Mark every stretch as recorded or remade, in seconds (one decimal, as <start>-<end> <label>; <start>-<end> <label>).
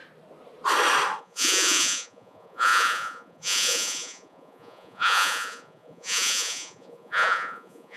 0.0-1.2 recorded; 1.2-8.0 remade